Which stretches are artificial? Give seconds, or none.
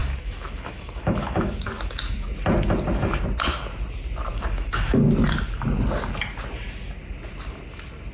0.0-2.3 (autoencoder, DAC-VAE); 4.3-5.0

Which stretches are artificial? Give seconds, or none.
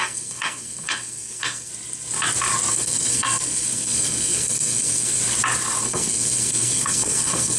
0.0-1.7 (codec, SNAC); 2.7-5.2; 5.8-7.6